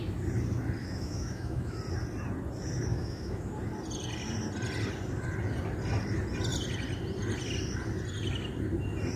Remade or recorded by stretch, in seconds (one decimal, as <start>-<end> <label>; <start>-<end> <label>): 0.0-0.8 recorded; 0.8-1.8 remade; 1.8-2.9 recorded; 2.9-3.5 remade; 3.5-9.2 recorded